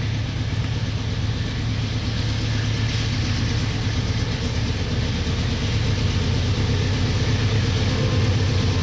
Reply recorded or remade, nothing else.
recorded